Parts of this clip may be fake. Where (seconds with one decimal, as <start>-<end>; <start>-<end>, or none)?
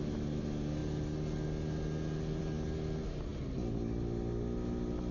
none